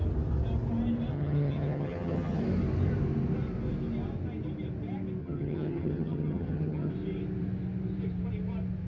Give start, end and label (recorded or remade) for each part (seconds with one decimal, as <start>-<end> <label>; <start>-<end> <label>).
0.0-1.1 recorded; 1.1-2.4 remade; 2.4-5.2 recorded; 5.2-6.9 remade; 6.9-8.9 recorded